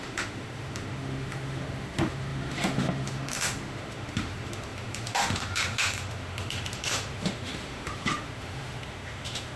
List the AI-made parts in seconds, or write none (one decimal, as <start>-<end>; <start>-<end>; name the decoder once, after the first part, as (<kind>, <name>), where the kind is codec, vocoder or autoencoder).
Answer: 0.0-9.6 (autoencoder, DAC-VAE)